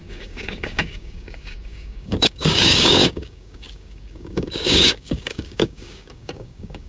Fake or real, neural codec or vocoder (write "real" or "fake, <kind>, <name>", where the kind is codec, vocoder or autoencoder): fake, codec, DAC